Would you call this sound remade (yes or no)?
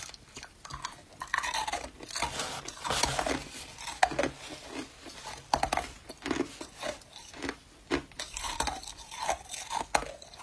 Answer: no